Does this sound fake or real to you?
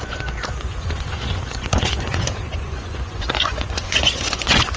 fake